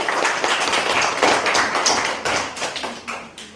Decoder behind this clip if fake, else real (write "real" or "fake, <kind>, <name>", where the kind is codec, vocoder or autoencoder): real